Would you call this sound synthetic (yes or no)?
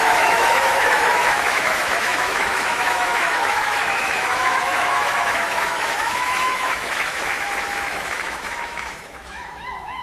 yes